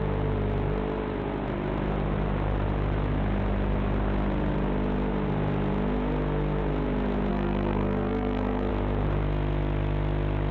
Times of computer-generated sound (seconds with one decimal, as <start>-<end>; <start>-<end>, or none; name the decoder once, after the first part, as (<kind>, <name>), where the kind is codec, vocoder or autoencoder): 7.3-8.7 (codec, SNAC)